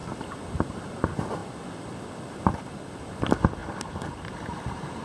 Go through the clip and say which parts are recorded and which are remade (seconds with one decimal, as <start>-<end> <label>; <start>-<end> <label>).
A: 0.0-3.6 remade; 3.6-4.3 recorded; 4.3-5.0 remade